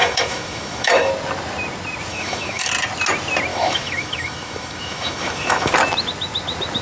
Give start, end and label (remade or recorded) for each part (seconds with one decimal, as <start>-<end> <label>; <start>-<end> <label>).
0.0-1.1 remade; 1.1-2.1 recorded; 2.1-2.7 remade; 2.7-3.5 recorded; 3.5-5.7 remade; 5.7-6.8 recorded